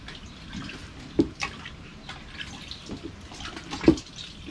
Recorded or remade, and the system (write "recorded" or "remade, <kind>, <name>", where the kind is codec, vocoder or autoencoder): recorded